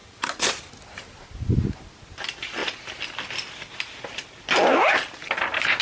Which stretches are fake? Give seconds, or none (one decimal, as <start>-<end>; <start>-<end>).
0.0-0.7